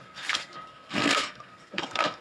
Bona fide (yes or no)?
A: no